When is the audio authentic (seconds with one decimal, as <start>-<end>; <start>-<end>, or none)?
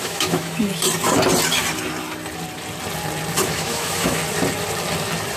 0.7-3.4; 4.2-5.4